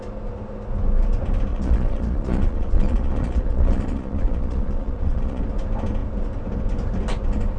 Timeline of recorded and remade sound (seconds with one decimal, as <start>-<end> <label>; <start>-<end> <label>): 0.0-1.5 recorded; 1.5-5.4 remade; 5.4-7.6 recorded